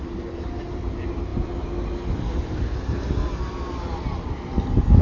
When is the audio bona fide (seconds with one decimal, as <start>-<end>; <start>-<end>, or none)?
0.0-5.0